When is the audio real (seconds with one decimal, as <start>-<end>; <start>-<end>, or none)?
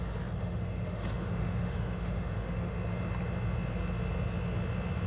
0.0-0.4; 2.7-5.1